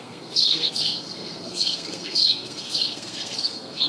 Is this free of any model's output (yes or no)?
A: no